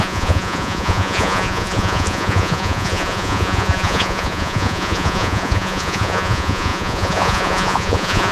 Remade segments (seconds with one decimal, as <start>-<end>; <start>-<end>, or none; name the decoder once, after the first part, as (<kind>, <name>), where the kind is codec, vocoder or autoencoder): 0.0-8.3 (vocoder, Vocos)